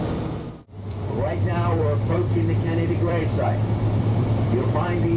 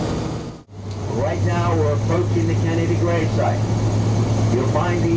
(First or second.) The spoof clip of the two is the first